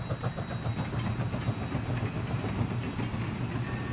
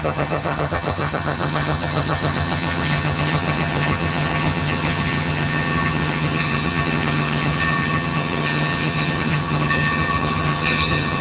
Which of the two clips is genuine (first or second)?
first